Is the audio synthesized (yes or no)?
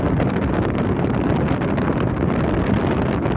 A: no